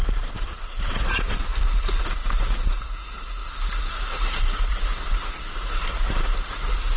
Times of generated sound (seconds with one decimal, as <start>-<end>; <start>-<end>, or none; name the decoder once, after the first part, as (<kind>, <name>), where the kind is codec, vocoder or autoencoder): 0.0-1.5 (vocoder, BigVGAN v2); 2.3-3.4; 4.7-7.0